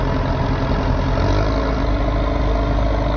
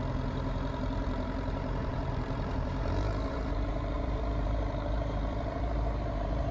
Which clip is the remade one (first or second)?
second